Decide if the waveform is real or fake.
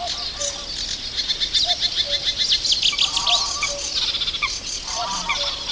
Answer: real